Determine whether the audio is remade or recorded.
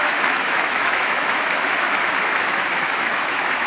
remade